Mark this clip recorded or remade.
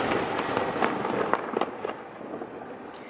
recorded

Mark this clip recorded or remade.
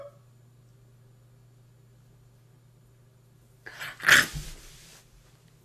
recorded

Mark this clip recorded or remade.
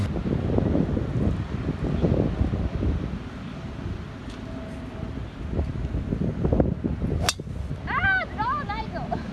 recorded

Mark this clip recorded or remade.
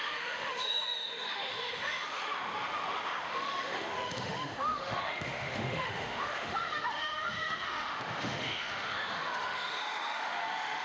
remade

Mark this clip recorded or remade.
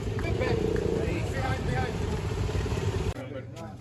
remade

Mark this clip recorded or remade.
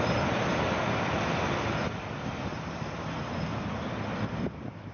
recorded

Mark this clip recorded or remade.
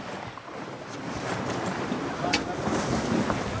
recorded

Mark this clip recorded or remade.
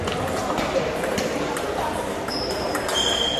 remade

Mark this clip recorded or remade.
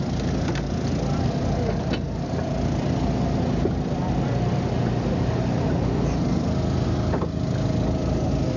recorded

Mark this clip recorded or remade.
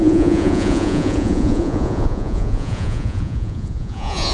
remade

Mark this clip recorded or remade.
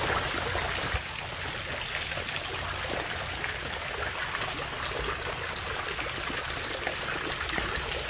recorded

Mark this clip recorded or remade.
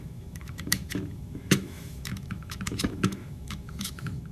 remade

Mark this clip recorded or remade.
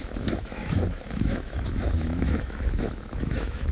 remade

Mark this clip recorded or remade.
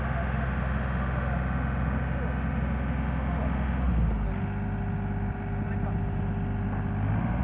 recorded